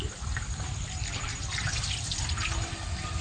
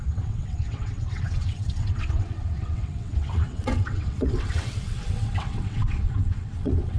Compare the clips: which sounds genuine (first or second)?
first